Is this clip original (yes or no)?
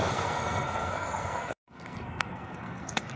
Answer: no